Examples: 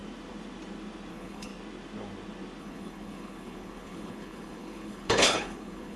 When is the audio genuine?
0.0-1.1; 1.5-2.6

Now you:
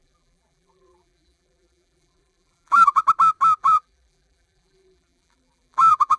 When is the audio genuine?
3.0-3.6

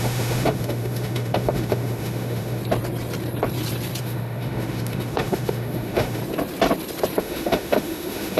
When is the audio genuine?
2.6-4.0; 6.2-7.2

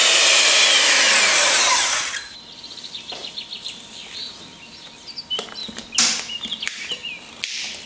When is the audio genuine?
0.0-7.9